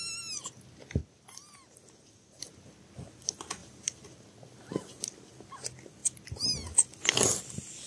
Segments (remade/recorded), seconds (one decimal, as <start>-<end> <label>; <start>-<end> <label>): 0.0-3.6 recorded; 3.6-4.1 remade; 4.1-7.9 recorded